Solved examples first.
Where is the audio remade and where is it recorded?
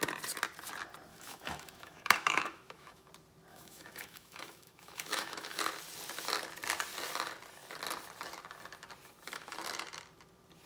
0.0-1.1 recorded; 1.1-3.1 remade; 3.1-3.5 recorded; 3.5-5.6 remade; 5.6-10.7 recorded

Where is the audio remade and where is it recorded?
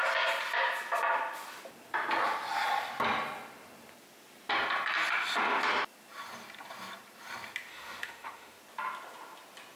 0.0-7.7 recorded; 7.7-8.6 remade; 8.6-9.8 recorded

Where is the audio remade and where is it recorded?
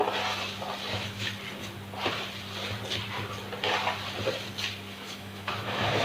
0.0-0.9 recorded; 0.9-1.3 remade; 1.3-4.9 recorded; 4.9-6.0 remade